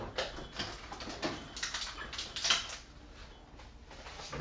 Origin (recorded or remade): recorded